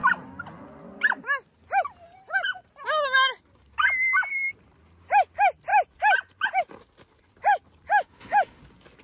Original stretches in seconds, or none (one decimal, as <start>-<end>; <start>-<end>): 0.0-7.9; 8.6-9.0